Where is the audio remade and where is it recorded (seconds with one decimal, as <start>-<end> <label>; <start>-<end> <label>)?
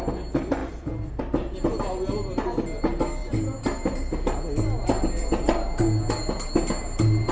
0.0-0.6 recorded; 0.6-1.2 remade; 1.2-7.3 recorded